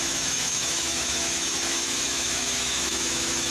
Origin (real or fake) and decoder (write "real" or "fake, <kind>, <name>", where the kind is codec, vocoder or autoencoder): fake, autoencoder, DAC-VAE